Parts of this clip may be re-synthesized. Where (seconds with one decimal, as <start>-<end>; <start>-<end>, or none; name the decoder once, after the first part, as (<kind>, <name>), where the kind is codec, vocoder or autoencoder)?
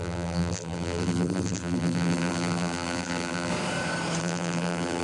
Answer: 0.0-3.5 (vocoder, BigVGAN v2); 4.2-5.0